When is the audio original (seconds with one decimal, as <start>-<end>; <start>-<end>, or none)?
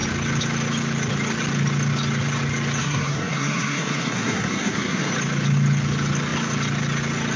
0.0-2.8; 5.1-7.4